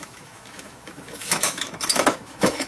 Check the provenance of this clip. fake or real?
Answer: fake